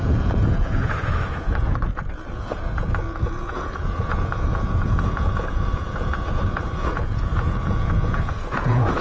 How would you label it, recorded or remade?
remade